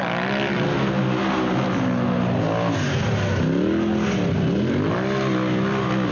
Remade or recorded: recorded